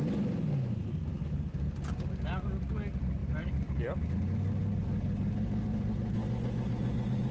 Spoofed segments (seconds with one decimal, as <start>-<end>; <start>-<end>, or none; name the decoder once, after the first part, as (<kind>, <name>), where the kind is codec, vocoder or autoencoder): none